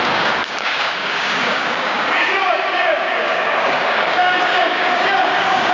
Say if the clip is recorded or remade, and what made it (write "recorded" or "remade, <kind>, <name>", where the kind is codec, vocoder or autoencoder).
remade, codec, DAC